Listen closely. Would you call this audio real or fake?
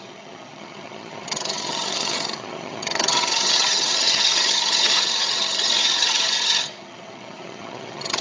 fake